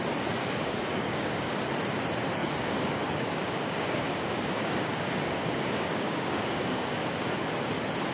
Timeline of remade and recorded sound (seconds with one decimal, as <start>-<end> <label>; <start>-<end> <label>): 0.0-0.4 recorded; 0.4-1.6 remade; 1.6-2.4 recorded; 2.4-7.3 remade; 7.3-8.1 recorded